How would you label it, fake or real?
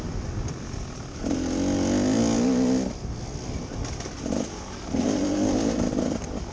real